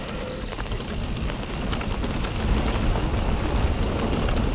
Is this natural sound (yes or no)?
yes